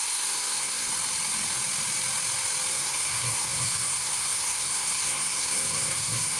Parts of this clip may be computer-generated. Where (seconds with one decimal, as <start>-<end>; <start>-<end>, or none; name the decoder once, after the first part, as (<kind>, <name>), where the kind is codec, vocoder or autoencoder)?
0.0-0.9 (codec, SNAC); 2.7-6.4